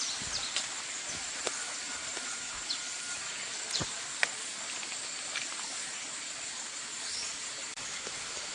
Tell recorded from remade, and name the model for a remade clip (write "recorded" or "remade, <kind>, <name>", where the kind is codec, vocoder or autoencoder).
recorded